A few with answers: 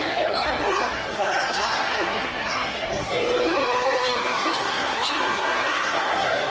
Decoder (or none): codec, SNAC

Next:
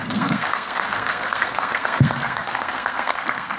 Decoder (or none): codec, SNAC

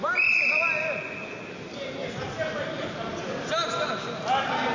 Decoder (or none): none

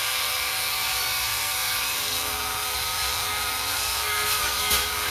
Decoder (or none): codec, SNAC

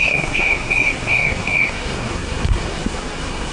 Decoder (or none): codec, SNAC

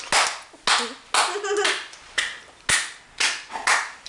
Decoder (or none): none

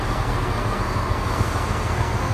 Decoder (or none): codec, SNAC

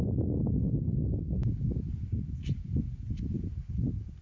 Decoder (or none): none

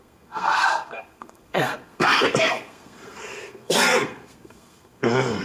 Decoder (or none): codec, SNAC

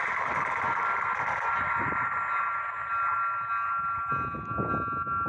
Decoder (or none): none